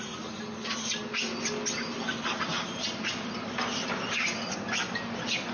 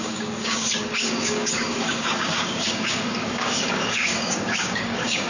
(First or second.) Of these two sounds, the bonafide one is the first